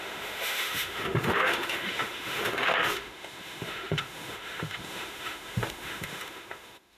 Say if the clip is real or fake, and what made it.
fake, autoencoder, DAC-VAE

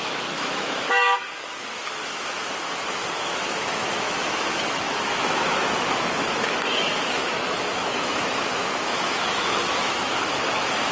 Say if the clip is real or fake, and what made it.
fake, autoencoder, DAC-VAE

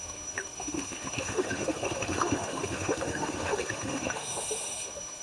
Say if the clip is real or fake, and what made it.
fake, autoencoder, DAC-VAE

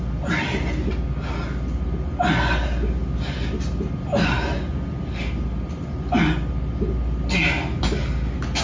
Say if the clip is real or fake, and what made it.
real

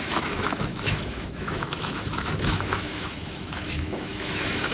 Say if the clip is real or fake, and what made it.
fake, autoencoder, DAC-VAE